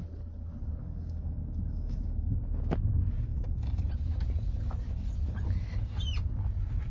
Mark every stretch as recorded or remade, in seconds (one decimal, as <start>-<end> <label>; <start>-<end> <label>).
0.0-0.8 recorded; 0.8-2.4 remade; 2.4-3.3 recorded; 3.3-3.8 remade; 3.8-6.9 recorded